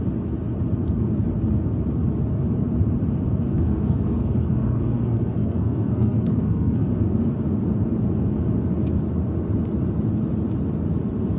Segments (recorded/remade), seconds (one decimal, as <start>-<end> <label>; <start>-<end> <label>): 0.0-3.5 recorded; 3.5-6.9 remade; 6.9-11.4 recorded

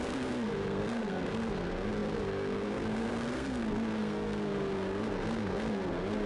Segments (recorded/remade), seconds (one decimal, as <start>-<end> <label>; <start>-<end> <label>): 0.0-6.3 remade

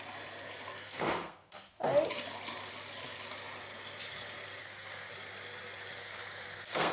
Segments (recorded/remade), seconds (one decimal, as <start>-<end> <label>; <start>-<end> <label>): 0.0-0.8 recorded; 0.8-1.8 remade; 1.8-4.6 recorded; 4.6-5.1 remade; 5.1-6.0 recorded; 6.0-6.9 remade

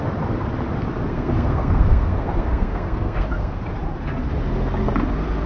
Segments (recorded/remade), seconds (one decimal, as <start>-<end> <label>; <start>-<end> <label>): 0.0-1.1 recorded; 1.1-3.6 remade; 3.6-5.5 recorded

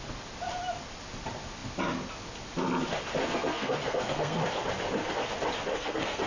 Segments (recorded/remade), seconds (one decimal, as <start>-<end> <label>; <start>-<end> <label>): 0.0-3.2 recorded; 3.2-4.4 remade; 4.4-5.7 recorded; 5.7-6.3 remade

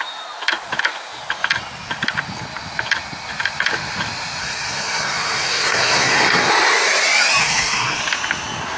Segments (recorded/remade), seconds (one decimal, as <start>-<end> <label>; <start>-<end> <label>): 0.0-4.4 recorded; 4.4-6.5 remade; 6.5-7.4 recorded; 7.4-8.0 remade; 8.0-8.8 recorded

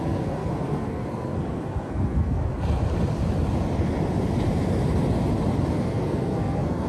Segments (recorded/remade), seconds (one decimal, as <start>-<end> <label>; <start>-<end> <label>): 0.0-2.4 remade; 2.4-5.7 recorded; 5.7-6.9 remade

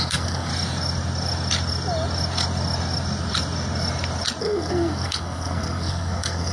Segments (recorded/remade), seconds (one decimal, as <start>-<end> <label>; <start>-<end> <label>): 0.0-0.5 remade; 0.5-4.4 recorded; 4.4-6.5 remade